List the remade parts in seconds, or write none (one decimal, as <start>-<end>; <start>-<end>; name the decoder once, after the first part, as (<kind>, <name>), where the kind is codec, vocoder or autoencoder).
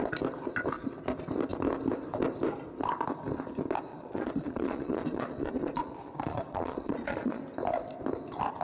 3.9-7.4 (vocoder, Vocos)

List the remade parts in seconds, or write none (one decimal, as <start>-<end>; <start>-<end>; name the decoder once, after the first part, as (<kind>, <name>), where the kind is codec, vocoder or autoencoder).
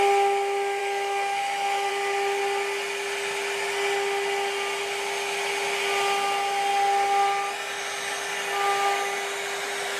0.8-1.9 (autoencoder, DAC-VAE)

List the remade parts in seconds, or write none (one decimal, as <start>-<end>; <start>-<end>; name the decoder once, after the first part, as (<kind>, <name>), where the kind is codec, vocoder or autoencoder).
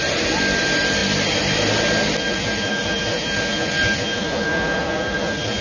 none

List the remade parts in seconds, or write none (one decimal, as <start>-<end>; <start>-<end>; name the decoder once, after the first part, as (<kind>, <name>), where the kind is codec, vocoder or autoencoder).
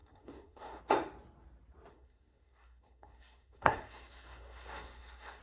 0.0-0.8 (codec, SNAC); 1.9-5.4